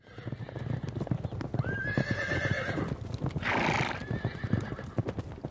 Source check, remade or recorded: recorded